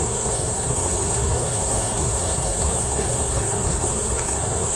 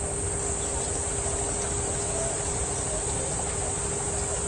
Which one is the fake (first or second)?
first